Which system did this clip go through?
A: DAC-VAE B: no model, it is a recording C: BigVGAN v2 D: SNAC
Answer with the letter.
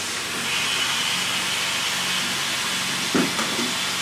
B